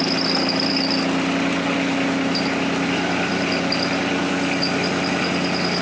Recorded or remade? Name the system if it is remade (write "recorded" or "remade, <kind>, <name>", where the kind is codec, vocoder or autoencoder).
recorded